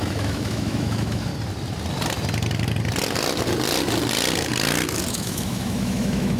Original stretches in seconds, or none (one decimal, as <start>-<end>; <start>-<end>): 1.3-5.1